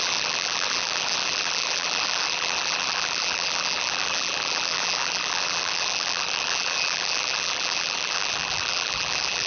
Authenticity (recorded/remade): remade